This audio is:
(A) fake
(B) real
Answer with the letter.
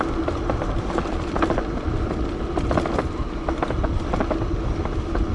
B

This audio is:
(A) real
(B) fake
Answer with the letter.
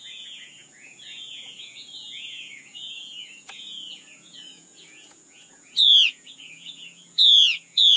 B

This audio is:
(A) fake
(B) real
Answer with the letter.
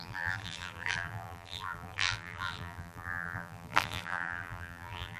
A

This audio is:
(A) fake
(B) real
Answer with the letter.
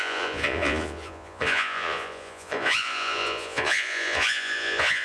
A